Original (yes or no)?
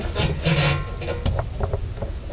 yes